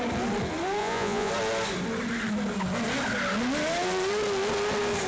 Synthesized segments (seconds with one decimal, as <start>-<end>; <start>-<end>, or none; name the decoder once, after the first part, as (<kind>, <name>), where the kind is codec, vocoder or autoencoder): 0.8-1.3 (vocoder, Vocos)